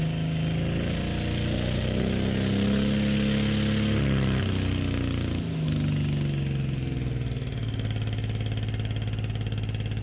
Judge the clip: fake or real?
real